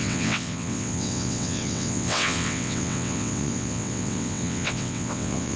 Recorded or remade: remade